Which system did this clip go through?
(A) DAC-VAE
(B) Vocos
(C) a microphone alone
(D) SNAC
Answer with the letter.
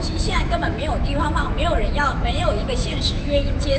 A